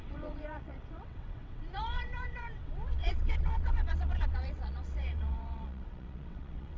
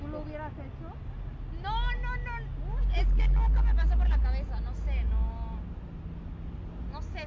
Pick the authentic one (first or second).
second